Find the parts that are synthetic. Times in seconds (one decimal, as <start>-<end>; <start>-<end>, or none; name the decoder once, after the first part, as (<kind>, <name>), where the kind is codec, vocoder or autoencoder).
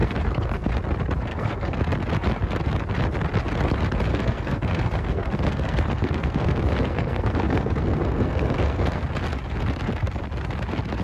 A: 0.0-0.7 (codec, SNAC); 1.3-1.8; 4.1-9.0